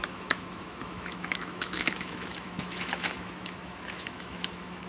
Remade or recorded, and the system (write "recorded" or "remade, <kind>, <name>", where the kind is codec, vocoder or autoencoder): remade, autoencoder, DAC-VAE